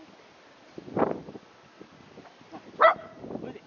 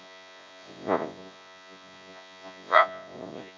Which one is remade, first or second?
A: second